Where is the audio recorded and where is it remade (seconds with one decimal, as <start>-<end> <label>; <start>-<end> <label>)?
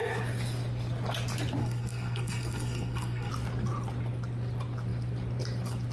0.0-1.6 recorded; 1.6-3.3 remade; 3.3-5.9 recorded